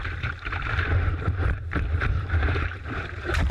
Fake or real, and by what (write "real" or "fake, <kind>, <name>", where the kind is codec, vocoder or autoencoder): fake, vocoder, BigVGAN v2